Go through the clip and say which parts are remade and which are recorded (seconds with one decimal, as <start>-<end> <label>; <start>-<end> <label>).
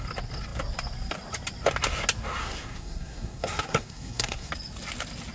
0.0-2.4 recorded; 2.4-4.5 remade; 4.5-5.3 recorded